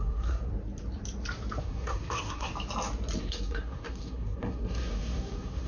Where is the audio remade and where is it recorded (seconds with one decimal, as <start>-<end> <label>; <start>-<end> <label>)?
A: 0.0-0.5 remade; 0.5-1.6 recorded; 1.6-2.5 remade; 2.5-3.2 recorded; 3.2-5.7 remade